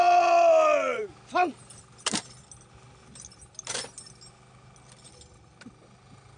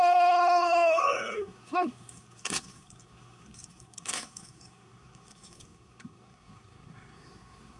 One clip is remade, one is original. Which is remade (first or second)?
second